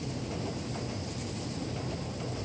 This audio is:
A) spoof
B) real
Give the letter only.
B